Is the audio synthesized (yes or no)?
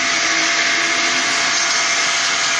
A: no